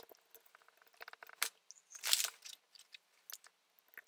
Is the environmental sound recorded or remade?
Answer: recorded